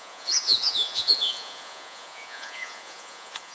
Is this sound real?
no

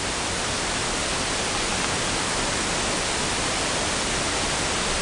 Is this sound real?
yes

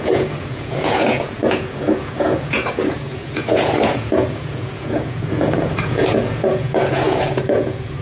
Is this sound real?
no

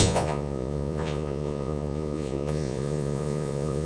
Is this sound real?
no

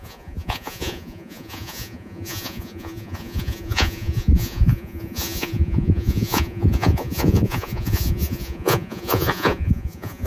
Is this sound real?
no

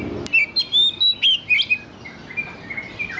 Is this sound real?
yes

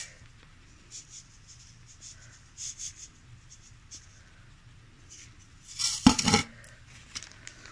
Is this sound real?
yes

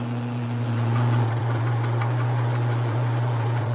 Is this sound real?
no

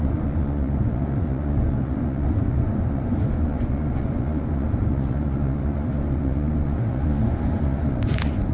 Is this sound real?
no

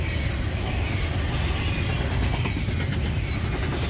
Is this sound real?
yes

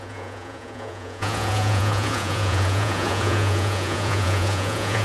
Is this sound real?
no